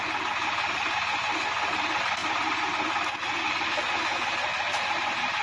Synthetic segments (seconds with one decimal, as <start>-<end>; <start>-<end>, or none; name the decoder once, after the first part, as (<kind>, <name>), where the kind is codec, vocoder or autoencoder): none